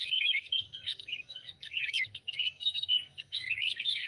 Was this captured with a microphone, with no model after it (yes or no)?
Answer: no